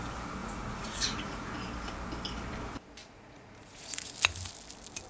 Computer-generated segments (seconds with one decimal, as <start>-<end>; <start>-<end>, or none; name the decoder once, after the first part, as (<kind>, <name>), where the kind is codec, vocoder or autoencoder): 0.4-1.5 (vocoder, Vocos); 3.0-4.1